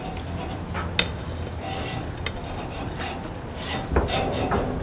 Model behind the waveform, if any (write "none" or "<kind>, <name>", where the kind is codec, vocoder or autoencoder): none